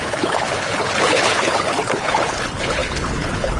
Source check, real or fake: fake